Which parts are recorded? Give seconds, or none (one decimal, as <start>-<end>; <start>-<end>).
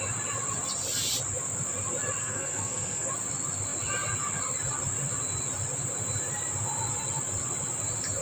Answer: 0.0-2.2; 3.1-8.2